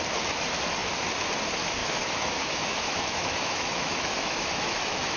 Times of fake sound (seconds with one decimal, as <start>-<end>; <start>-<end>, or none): 1.8-5.2